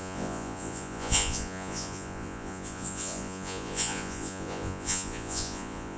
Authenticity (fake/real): fake